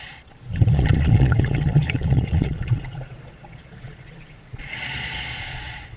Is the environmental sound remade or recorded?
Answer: remade